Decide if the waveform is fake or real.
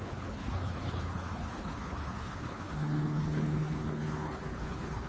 fake